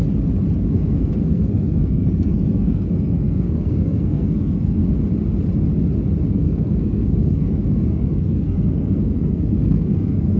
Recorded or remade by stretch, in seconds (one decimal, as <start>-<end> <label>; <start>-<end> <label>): 0.0-0.7 recorded; 0.7-4.8 remade; 4.8-6.3 recorded; 6.3-10.4 remade